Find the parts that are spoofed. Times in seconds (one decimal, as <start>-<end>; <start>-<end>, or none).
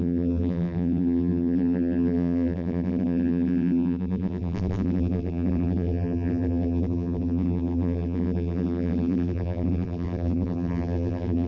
0.0-11.5